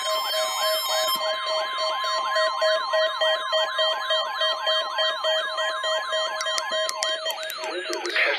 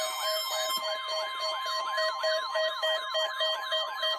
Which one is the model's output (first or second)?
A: second